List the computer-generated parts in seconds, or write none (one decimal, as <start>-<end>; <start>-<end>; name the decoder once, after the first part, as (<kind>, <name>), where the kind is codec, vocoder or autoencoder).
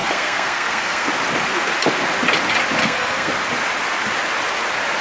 0.0-1.1 (codec, SNAC); 2.8-3.3